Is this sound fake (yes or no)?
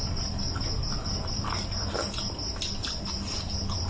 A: no